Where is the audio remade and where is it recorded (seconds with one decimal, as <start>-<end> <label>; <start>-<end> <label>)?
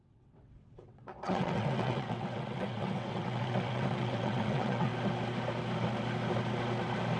0.0-4.9 remade; 4.9-7.2 recorded